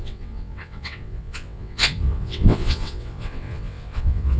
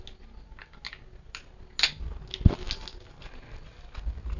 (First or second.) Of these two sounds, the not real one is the first